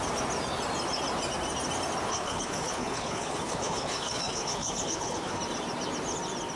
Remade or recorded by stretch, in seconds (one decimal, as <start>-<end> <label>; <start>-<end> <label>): 0.0-2.1 recorded; 2.1-5.4 remade; 5.4-6.5 recorded